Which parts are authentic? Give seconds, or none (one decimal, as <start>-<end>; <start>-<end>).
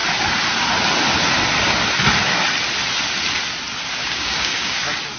0.0-4.0; 4.8-5.2